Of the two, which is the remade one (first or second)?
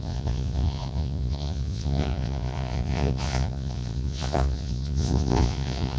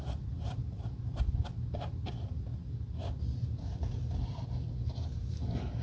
first